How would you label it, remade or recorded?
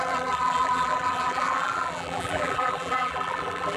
remade